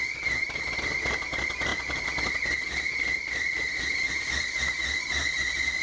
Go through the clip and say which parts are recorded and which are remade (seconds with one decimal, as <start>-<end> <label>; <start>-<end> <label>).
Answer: 0.0-5.8 recorded